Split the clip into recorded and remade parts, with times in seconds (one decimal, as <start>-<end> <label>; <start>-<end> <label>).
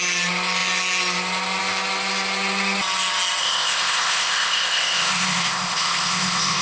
0.0-3.4 recorded; 3.4-6.6 remade